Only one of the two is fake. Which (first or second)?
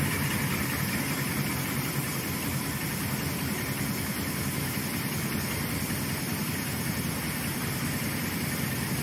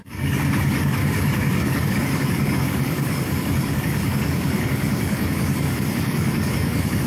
second